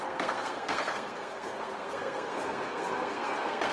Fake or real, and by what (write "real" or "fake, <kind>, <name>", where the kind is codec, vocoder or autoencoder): fake, codec, SNAC